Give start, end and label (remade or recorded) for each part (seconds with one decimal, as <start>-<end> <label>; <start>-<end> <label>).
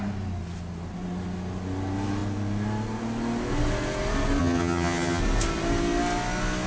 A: 0.0-4.4 recorded; 4.4-5.2 remade; 5.2-6.7 recorded